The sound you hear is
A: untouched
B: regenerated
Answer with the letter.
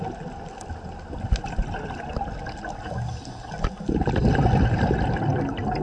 A